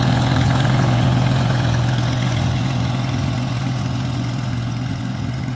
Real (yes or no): no